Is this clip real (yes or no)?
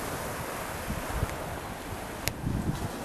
yes